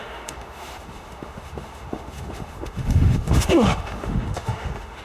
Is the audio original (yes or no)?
no